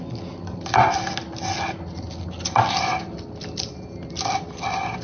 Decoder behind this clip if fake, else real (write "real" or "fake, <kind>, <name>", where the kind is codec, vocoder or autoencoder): real